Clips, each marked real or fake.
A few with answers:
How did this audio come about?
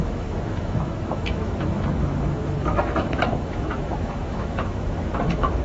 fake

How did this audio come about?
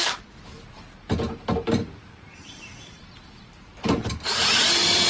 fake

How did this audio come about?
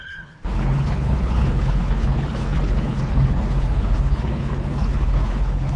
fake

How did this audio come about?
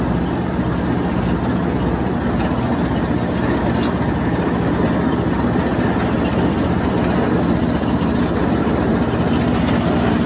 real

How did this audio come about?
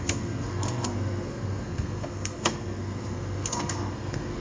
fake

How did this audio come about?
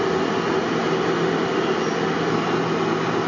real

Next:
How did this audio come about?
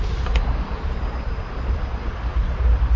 fake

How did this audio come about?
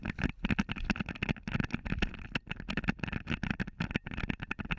real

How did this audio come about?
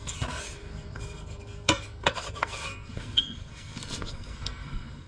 fake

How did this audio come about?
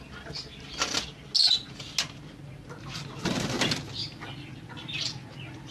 real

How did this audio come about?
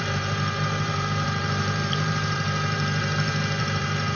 fake